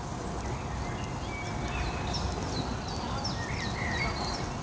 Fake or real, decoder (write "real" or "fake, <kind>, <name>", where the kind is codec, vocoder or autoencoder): real